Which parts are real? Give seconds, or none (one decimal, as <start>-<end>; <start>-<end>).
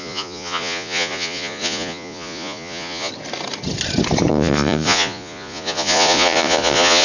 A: 3.1-4.3